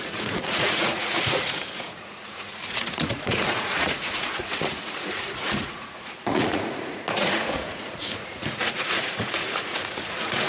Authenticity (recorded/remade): remade